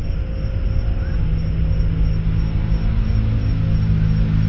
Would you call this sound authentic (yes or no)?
yes